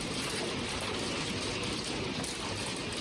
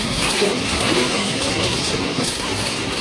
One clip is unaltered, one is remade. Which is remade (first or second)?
second